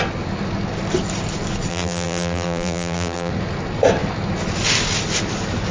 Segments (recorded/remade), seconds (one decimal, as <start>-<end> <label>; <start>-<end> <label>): 0.0-1.7 recorded; 1.7-3.3 remade; 3.3-5.7 recorded